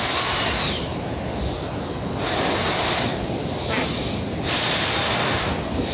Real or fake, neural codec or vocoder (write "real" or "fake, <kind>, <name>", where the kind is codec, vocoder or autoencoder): real